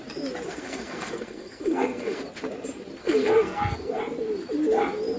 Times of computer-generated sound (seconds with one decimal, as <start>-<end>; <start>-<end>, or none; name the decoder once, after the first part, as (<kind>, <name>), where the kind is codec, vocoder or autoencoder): 0.5-2.2 (codec, SNAC); 3.0-4.0